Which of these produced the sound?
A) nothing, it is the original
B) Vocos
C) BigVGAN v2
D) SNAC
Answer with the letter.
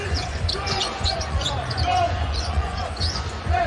B